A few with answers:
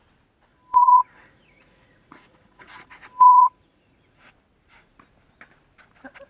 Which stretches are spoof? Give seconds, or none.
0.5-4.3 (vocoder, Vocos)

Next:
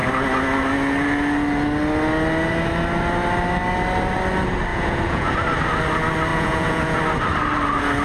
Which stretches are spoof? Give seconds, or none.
4.7-5.3 (vocoder, Vocos); 6.3-7.0

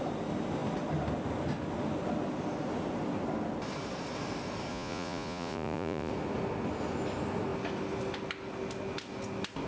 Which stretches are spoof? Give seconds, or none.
4.7-6.1 (vocoder, Vocos)